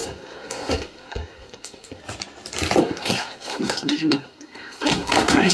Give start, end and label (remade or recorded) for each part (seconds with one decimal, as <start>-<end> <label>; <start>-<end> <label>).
0.0-2.0 remade; 2.0-2.8 recorded; 2.8-5.5 remade